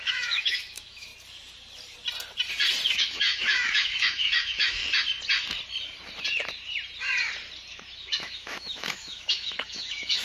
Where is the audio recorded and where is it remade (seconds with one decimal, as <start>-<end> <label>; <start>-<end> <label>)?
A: 0.0-1.1 remade; 1.1-2.9 recorded; 2.9-4.8 remade; 4.8-7.7 recorded; 7.7-10.2 remade